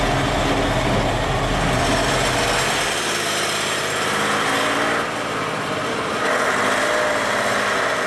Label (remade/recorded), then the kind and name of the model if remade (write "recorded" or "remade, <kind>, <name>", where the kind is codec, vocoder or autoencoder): recorded